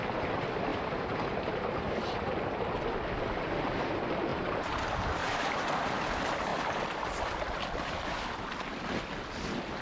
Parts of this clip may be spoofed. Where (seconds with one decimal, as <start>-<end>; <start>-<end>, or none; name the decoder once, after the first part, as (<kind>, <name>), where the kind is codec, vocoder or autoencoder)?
0.7-2.3 (vocoder, BigVGAN v2); 4.3-4.8; 5.2-6.0